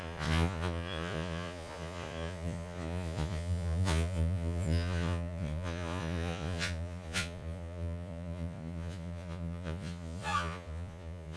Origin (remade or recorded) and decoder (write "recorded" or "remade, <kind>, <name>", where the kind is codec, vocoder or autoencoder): remade, vocoder, Vocos